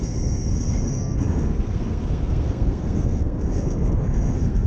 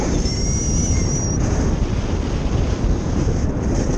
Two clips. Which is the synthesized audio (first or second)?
first